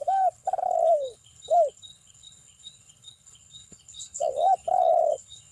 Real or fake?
fake